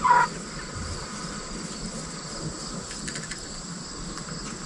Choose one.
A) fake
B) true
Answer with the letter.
B